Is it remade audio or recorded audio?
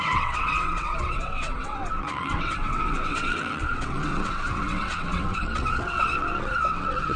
remade